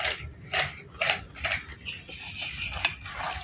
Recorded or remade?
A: recorded